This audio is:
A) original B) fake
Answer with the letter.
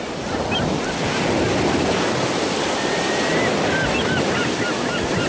A